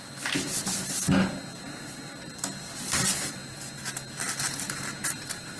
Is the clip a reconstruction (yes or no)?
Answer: no